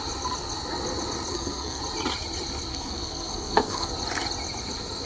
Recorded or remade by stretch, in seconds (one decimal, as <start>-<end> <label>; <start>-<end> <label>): 0.0-1.3 recorded; 1.3-1.8 remade; 1.8-2.7 recorded; 2.7-3.9 remade; 3.9-5.1 recorded